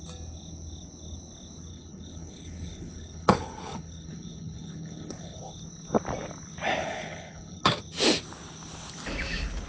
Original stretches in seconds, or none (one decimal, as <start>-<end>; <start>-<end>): 0.0-1.7; 5.4-6.8; 7.8-9.7